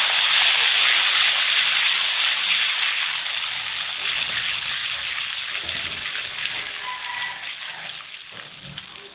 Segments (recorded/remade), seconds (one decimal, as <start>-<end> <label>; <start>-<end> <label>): 0.0-9.1 recorded